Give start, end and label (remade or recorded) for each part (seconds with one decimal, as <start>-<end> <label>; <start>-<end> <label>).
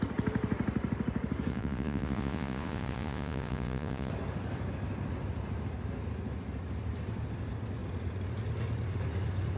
0.0-1.5 recorded; 1.5-4.1 remade; 4.1-9.6 recorded